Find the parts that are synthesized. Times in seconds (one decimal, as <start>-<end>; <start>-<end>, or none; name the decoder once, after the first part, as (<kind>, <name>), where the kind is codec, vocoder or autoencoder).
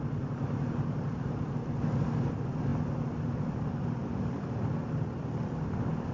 none